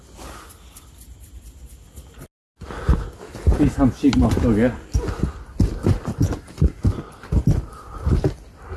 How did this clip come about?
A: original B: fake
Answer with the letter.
A